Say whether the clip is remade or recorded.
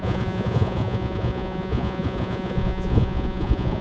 remade